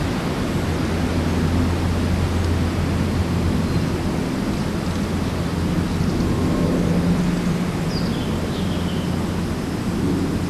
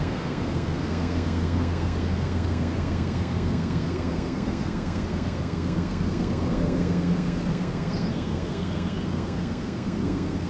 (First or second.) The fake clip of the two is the second